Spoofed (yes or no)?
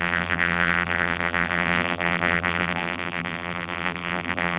yes